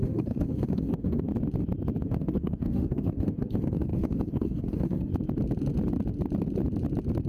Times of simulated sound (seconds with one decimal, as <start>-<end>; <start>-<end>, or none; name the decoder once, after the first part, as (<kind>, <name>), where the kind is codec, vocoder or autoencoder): 0.0-1.3 (autoencoder, DAC-VAE); 2.0-5.1